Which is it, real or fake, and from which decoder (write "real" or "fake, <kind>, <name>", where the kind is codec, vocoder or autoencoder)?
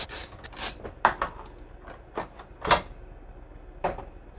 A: real